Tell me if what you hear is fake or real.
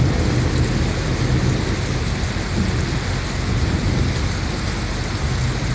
real